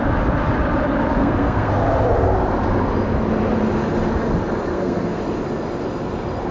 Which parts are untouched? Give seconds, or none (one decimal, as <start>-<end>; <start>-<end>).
0.0-1.2; 1.7-4.7; 5.2-6.5